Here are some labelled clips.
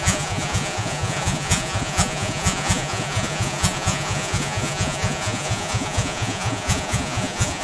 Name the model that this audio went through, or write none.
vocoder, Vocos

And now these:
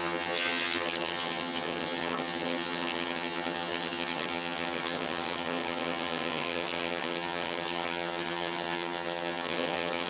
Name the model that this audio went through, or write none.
vocoder, HiFi-GAN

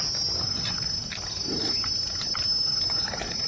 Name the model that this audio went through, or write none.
none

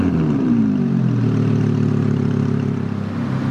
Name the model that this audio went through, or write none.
none